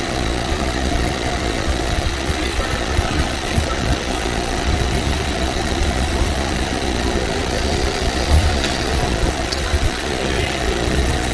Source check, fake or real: fake